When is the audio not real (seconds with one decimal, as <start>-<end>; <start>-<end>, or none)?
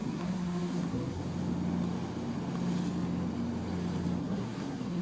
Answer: 0.0-1.2; 4.2-5.0